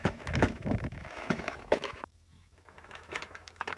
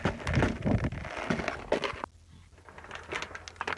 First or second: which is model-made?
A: first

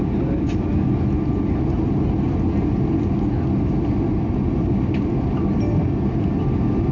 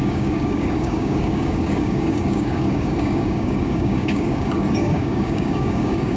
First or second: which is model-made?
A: second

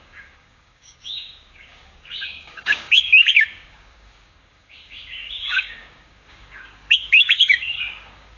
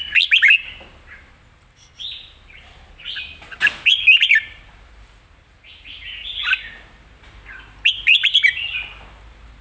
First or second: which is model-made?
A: first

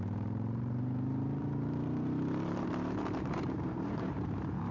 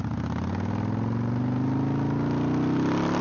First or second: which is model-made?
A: first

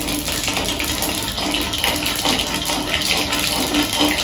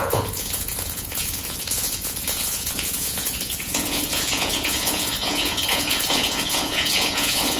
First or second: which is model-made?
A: second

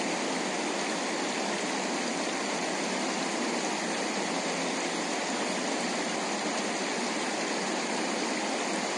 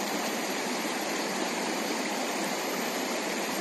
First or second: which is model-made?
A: second